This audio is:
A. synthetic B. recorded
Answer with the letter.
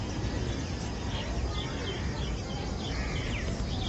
B